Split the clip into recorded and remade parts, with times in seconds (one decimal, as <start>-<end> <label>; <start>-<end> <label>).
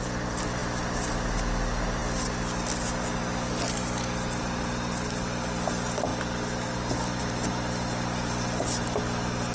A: 0.0-9.5 recorded